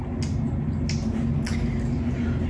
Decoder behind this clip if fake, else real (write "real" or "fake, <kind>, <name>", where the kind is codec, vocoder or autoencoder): real